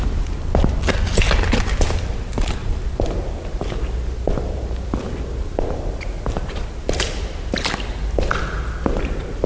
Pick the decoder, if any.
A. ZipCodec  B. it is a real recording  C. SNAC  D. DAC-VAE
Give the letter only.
B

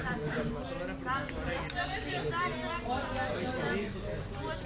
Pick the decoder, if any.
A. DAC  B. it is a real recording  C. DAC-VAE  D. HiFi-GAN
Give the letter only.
B